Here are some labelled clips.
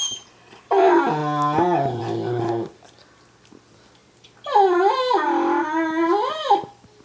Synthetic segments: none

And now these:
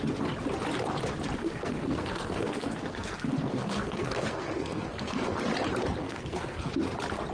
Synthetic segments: 1.4-5.4 (codec, SNAC); 6.0-6.7

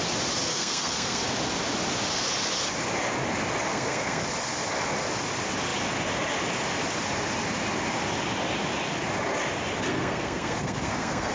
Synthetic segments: 0.5-1.2 (codec, SNAC); 3.7-4.2; 9.9-11.3

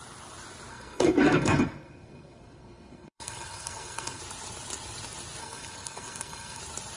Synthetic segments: 0.7-4.2 (codec, SNAC); 5.4-6.6

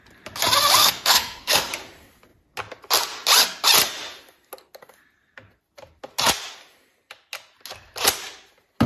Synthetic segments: 0.8-1.7 (codec, SNAC)

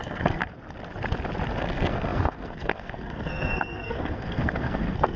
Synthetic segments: 0.0-0.4 (codec, SNAC); 1.6-5.2

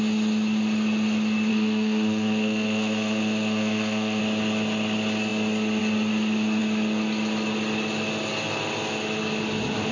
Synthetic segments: 1.5-4.2 (codec, SNAC)

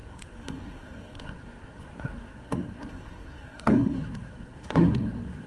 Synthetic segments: 0.0-5.5 (codec, SNAC)